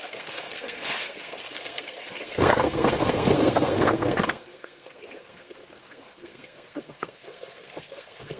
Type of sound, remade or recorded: remade